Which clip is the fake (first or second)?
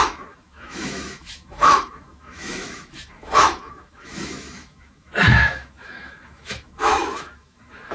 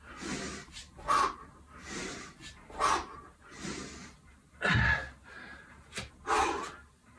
first